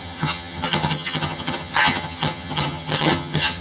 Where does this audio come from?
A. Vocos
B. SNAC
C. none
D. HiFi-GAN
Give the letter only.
D